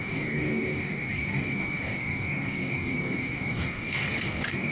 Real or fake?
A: fake